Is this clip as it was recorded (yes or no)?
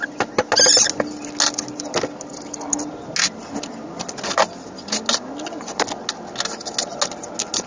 yes